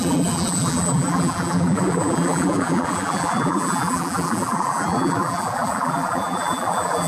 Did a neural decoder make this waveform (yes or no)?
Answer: yes